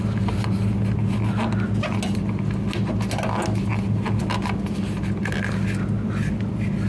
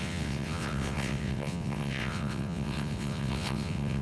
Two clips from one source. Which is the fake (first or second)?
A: second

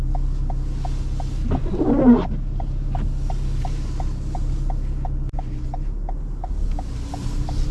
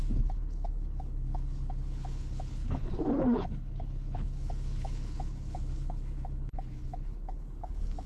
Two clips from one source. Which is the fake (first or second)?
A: second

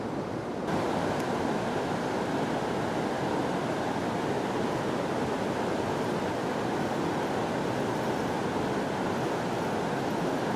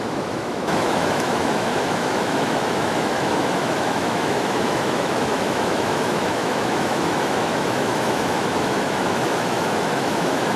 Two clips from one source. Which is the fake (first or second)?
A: second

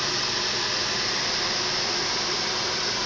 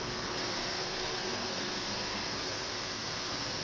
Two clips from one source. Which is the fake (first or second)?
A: second